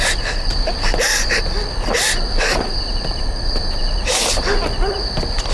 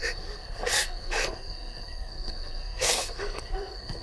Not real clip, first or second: second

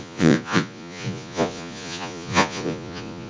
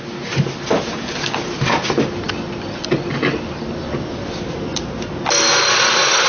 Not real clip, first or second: first